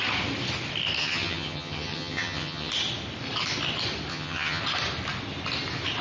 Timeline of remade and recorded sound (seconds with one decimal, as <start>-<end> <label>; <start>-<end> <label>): 0.0-1.0 recorded; 1.0-2.7 remade; 2.7-4.1 recorded; 4.1-4.6 remade; 4.6-6.0 recorded